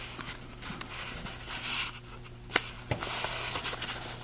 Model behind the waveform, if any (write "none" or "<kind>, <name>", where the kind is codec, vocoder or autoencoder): none